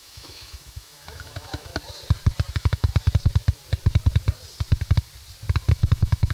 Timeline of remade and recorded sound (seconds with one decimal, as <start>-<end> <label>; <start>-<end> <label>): 0.0-1.7 remade; 1.7-2.5 recorded; 2.5-2.9 remade; 2.9-5.7 recorded; 5.7-6.3 remade